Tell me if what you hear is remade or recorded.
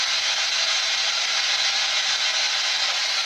recorded